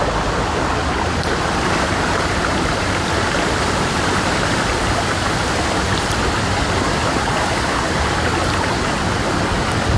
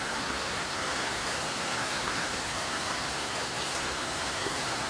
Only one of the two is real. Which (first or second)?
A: first